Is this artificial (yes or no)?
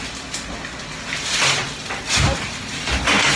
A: no